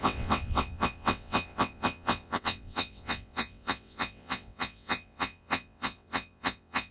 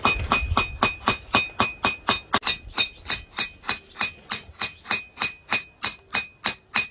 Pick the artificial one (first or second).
first